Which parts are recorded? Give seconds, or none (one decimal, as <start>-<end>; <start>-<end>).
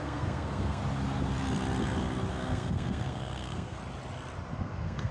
0.8-2.3; 3.8-4.5